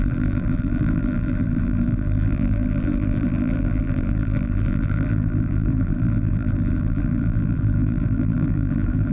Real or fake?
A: fake